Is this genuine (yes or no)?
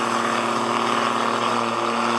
yes